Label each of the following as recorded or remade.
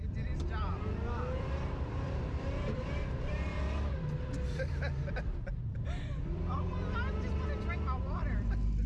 remade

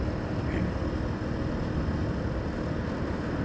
recorded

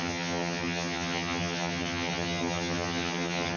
remade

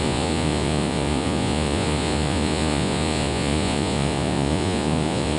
remade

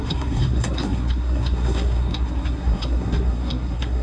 remade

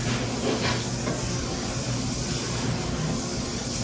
recorded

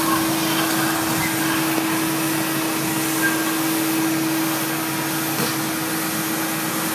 recorded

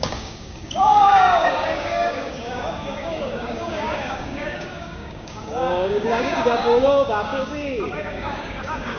remade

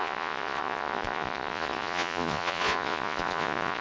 remade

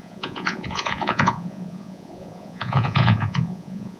remade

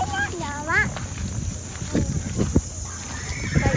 recorded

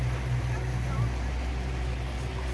recorded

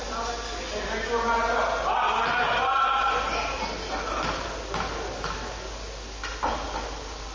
recorded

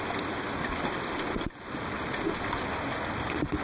recorded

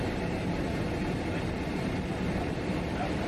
recorded